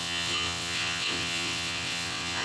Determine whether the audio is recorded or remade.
remade